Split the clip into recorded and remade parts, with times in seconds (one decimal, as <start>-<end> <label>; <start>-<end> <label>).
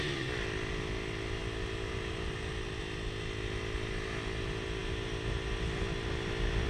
0.0-6.7 recorded